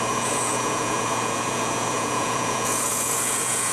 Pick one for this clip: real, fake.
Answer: fake